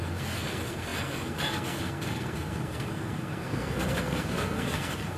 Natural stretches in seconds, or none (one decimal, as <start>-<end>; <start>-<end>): none